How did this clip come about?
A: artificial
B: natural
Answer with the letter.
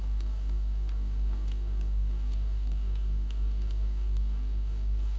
A